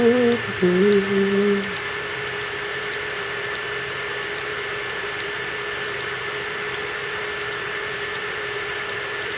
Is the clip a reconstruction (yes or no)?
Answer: yes